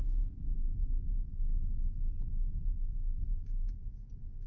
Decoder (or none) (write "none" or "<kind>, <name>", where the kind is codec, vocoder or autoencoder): none